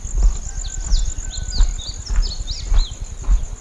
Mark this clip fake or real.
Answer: real